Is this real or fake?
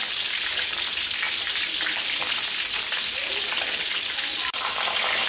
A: fake